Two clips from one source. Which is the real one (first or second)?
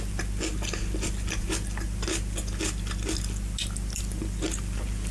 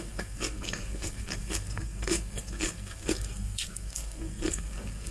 first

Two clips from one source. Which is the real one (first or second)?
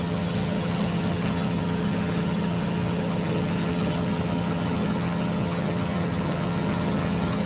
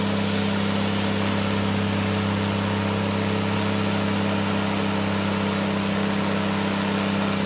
second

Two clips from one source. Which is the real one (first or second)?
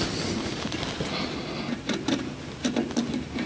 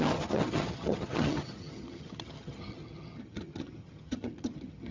first